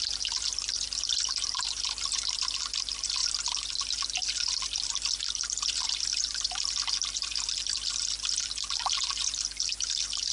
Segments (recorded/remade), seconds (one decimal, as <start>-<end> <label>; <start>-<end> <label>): 0.0-3.2 remade; 3.2-5.3 recorded; 5.3-7.3 remade; 7.3-7.9 recorded; 7.9-10.3 remade